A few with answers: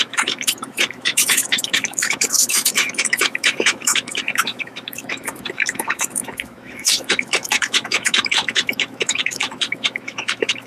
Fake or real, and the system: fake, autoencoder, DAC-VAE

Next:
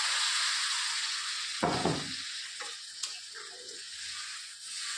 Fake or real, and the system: fake, vocoder, Vocos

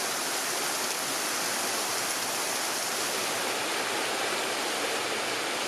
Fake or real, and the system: real